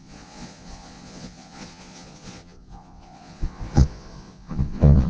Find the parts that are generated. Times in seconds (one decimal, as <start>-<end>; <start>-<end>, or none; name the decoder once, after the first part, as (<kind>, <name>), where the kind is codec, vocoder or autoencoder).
0.0-5.1 (vocoder, Vocos)